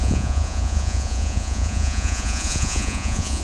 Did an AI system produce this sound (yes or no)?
yes